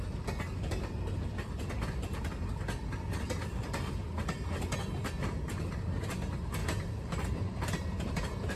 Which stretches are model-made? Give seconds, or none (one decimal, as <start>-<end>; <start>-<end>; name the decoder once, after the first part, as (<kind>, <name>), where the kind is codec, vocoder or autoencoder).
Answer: 6.6-8.6 (vocoder, BigVGAN v2)

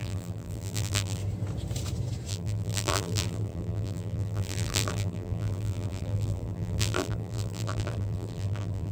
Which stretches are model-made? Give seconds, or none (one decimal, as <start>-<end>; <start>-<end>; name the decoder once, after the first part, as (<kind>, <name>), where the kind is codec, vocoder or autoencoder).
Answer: 0.0-1.2 (vocoder, BigVGAN v2); 2.3-8.9

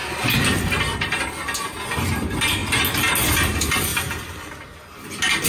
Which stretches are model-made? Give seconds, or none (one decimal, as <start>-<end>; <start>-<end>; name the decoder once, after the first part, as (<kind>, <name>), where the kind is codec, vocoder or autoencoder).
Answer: none

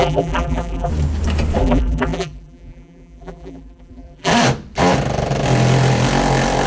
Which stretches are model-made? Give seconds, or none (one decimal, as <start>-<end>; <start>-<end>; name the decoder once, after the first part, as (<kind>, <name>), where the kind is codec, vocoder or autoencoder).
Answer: 0.0-0.9 (vocoder, BigVGAN v2); 1.6-4.3

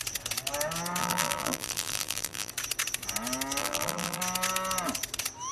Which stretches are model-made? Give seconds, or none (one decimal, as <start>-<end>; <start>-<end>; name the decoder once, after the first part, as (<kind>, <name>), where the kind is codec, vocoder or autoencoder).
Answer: 1.0-2.5 (vocoder, BigVGAN v2); 3.6-4.2

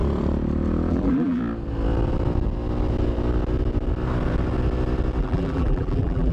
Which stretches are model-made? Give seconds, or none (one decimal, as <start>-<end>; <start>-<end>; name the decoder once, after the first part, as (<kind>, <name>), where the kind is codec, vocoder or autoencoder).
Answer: 0.9-1.4 (vocoder, BigVGAN v2); 5.2-6.3

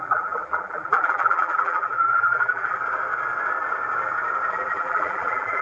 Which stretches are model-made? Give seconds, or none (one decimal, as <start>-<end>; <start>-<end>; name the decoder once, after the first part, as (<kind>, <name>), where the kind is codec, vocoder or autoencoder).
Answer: 0.0-2.8 (vocoder, BigVGAN v2); 4.5-5.6

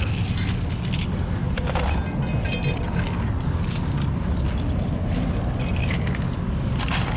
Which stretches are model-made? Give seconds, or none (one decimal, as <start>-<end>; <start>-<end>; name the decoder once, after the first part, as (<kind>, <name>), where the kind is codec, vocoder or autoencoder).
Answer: 1.4-1.9 (vocoder, BigVGAN v2)